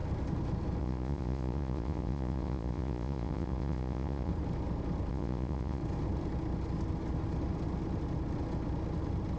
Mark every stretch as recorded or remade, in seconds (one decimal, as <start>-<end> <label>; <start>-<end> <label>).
0.0-0.8 recorded; 0.8-4.3 remade; 4.3-5.1 recorded; 5.1-5.8 remade; 5.8-9.4 recorded